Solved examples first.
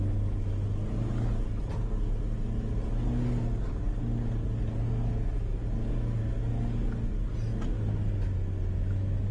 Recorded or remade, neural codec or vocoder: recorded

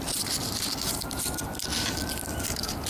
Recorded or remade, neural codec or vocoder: recorded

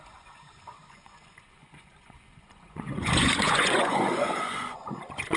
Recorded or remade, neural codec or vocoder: remade, vocoder, Vocos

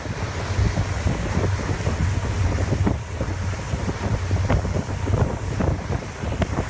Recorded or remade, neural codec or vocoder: recorded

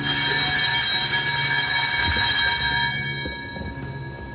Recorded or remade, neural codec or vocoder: recorded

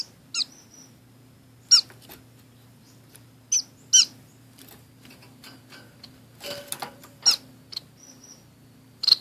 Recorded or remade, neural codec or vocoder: recorded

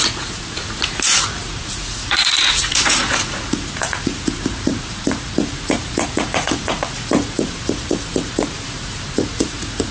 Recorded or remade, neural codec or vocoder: remade, vocoder, Vocos